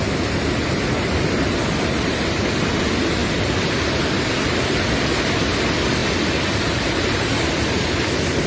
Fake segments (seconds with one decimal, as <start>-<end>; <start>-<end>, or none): none